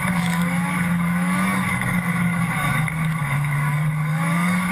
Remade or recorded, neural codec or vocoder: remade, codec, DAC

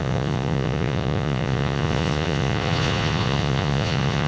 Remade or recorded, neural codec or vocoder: remade, vocoder, Vocos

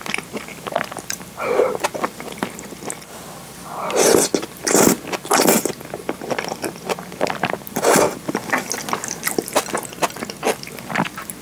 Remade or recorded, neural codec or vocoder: recorded